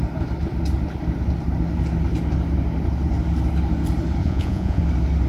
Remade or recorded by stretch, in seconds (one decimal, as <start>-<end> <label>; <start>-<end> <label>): 0.0-4.2 recorded; 4.2-4.8 remade; 4.8-5.3 recorded